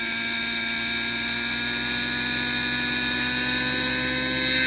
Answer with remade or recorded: recorded